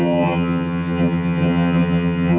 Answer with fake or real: fake